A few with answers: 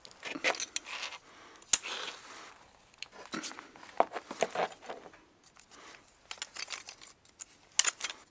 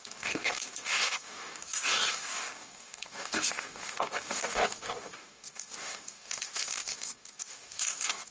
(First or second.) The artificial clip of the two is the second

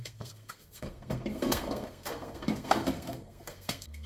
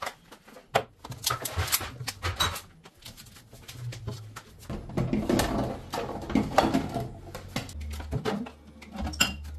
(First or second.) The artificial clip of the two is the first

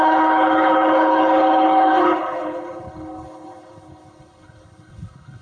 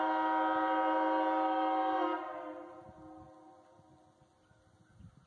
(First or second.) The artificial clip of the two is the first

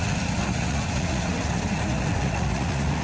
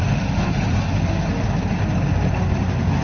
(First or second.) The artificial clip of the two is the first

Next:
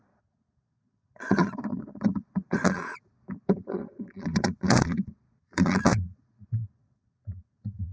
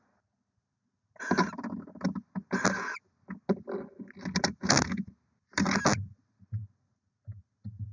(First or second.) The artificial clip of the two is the first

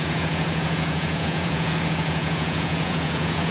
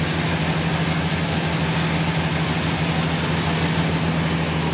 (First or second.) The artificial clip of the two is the first